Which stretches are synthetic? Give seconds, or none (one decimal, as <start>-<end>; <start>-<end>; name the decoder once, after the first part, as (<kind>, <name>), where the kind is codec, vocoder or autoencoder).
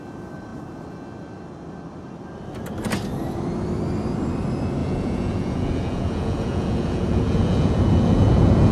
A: 4.8-8.7 (vocoder, Vocos)